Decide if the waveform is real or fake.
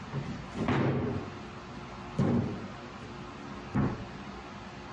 real